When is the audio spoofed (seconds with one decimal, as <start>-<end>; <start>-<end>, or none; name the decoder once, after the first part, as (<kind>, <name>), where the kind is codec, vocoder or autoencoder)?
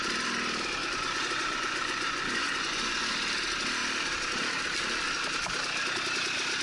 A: 0.8-3.1 (vocoder, Vocos)